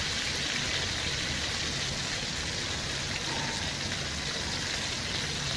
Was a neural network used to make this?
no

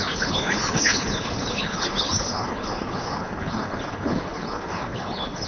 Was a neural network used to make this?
yes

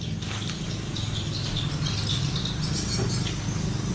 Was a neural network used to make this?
no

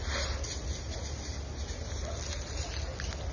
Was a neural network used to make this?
no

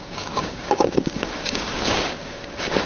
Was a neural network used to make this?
yes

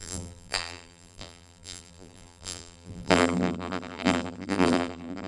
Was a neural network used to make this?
yes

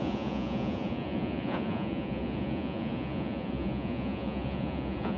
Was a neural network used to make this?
yes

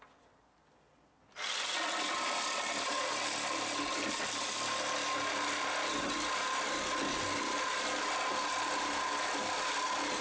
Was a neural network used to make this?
no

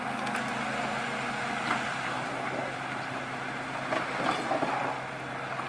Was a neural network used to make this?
no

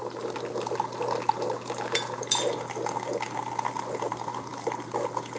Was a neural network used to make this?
no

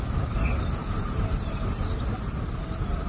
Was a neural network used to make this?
no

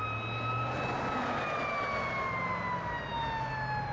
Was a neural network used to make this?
no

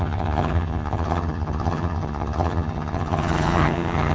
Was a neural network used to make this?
yes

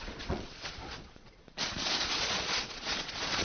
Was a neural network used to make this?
yes